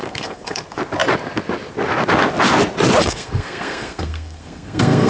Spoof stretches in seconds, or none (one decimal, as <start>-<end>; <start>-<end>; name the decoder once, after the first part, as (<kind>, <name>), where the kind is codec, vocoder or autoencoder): 0.0-0.6 (codec, SNAC); 3.0-5.1